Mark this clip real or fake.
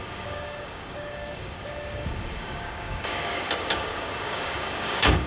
fake